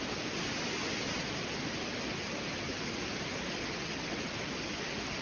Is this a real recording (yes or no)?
yes